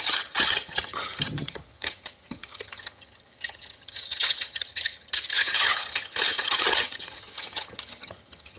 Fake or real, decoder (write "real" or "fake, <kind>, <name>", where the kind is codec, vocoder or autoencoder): fake, vocoder, HiFi-GAN